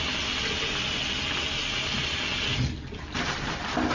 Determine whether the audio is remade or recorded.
recorded